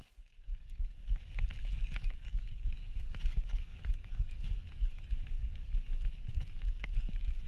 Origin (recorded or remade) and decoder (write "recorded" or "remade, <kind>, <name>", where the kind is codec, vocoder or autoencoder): remade, codec, DAC